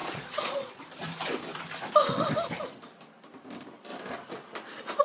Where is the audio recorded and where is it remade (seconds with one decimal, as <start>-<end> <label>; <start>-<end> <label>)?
0.0-0.8 remade; 0.8-5.0 recorded